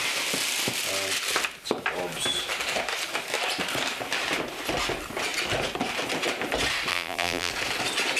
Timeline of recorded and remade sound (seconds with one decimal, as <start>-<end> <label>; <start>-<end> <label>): 0.0-6.9 recorded; 6.9-7.5 remade; 7.5-8.2 recorded

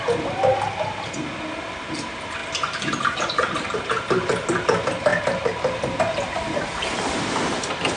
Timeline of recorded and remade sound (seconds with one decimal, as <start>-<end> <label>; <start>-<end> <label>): 0.0-2.4 recorded; 2.4-3.8 remade; 3.8-5.1 recorded; 5.1-6.0 remade; 6.0-8.0 recorded

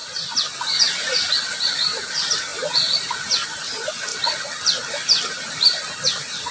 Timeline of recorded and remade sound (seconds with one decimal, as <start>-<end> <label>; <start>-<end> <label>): 0.0-6.5 recorded

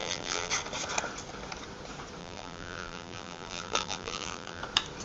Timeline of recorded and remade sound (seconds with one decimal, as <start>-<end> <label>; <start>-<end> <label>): 0.0-0.5 remade; 0.5-2.2 recorded; 2.2-4.6 remade; 4.6-5.0 recorded

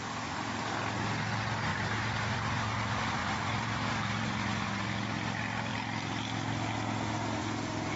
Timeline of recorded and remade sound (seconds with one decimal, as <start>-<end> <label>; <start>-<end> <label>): 0.0-1.7 recorded; 1.7-2.7 remade; 2.7-3.2 recorded; 3.2-3.9 remade; 3.9-8.0 recorded

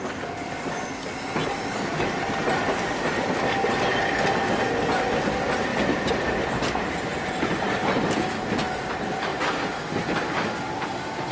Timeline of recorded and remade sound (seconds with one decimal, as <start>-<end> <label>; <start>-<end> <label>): 0.0-1.4 recorded; 1.4-3.9 remade; 3.9-9.3 recorded; 9.3-9.8 remade; 9.8-11.3 recorded

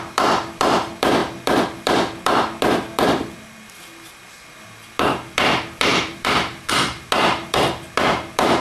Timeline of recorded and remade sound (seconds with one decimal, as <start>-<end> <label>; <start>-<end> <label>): 0.0-5.9 recorded; 5.9-6.7 remade; 6.7-8.6 recorded

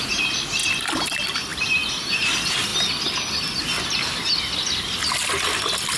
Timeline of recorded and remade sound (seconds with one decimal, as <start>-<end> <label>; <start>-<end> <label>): 0.0-1.5 recorded; 1.5-2.1 remade; 2.1-6.0 recorded